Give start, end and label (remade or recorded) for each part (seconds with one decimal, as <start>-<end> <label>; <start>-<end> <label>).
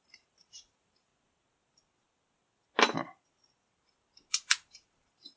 0.0-1.1 remade; 1.1-4.3 recorded; 4.3-5.4 remade